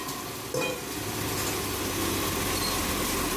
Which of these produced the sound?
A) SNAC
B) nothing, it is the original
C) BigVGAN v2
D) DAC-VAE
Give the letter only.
B